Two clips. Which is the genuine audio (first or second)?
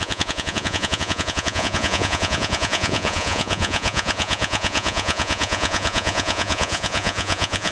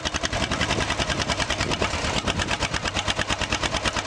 second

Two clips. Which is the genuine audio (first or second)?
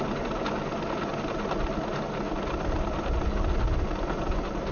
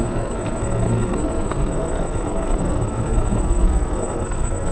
first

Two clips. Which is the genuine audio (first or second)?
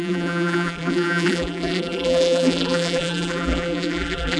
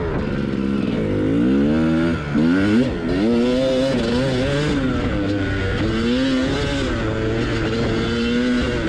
second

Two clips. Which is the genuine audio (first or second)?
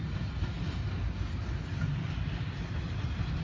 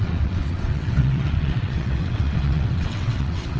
first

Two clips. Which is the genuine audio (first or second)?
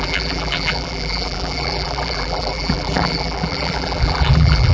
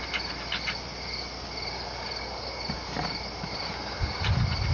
second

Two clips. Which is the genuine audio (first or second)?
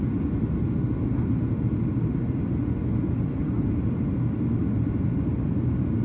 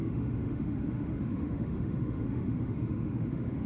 first